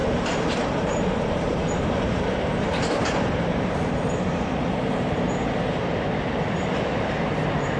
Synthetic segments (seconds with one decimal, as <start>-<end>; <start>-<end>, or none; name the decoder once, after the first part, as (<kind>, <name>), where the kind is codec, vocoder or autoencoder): 0.0-7.8 (vocoder, BigVGAN v2)